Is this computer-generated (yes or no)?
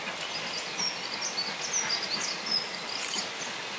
no